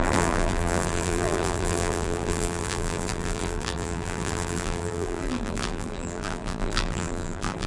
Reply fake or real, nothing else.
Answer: fake